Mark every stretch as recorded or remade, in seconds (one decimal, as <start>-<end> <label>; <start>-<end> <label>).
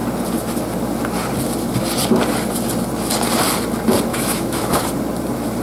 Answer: 0.0-4.1 recorded; 4.1-4.8 remade; 4.8-5.6 recorded